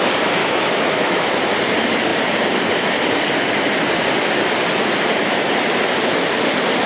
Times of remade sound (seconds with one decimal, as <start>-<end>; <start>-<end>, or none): 0.4-1.3